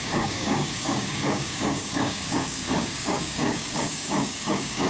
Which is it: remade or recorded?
remade